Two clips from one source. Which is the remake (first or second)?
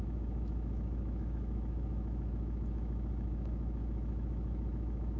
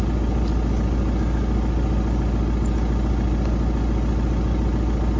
first